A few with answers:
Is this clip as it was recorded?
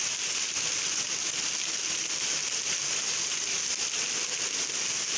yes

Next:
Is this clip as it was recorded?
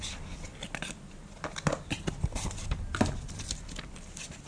yes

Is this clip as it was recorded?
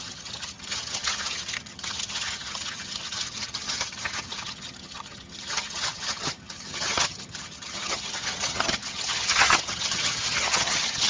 no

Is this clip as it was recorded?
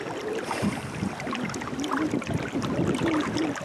yes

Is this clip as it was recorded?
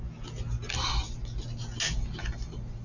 yes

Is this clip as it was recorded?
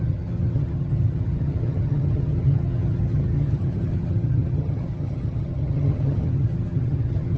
no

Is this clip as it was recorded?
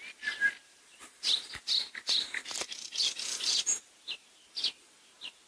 yes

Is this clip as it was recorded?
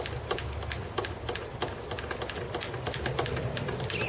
yes